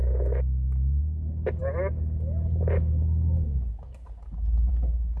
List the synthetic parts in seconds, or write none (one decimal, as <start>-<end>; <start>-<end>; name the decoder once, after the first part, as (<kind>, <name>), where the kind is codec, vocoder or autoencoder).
none